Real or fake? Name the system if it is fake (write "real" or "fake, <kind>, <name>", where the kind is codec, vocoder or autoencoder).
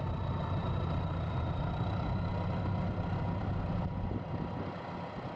fake, vocoder, BigVGAN v2